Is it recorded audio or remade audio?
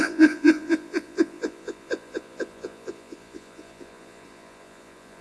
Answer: remade